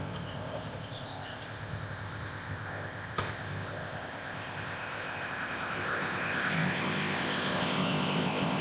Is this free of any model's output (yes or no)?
no